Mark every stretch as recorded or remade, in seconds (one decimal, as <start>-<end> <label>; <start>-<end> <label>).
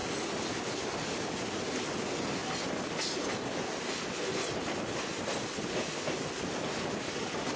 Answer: 0.0-7.6 recorded